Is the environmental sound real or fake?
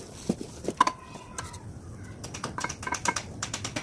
real